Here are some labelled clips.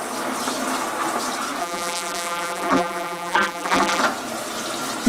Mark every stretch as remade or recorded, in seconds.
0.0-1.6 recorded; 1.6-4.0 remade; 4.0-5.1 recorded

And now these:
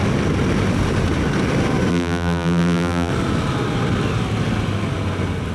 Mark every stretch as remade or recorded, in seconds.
0.0-1.9 recorded; 1.9-3.1 remade; 3.1-5.5 recorded

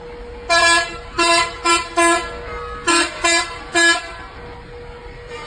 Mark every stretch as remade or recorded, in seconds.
0.0-5.5 recorded

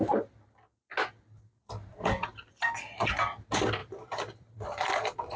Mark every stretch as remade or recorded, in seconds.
0.0-1.9 recorded; 1.9-2.6 remade; 2.6-3.8 recorded; 3.8-5.4 remade

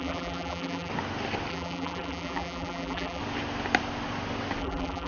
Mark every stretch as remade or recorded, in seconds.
0.0-0.9 remade; 0.9-1.5 recorded; 1.5-3.2 remade; 3.2-4.6 recorded; 4.6-5.1 remade

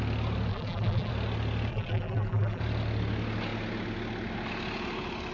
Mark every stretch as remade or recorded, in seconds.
0.0-0.5 recorded; 0.5-1.1 remade; 1.1-1.7 recorded; 1.7-2.6 remade; 2.6-5.3 recorded

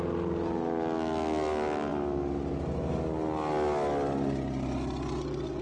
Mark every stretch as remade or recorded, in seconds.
0.0-5.6 recorded